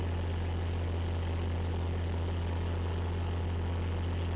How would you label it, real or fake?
real